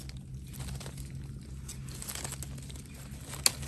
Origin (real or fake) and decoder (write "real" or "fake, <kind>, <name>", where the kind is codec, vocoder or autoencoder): real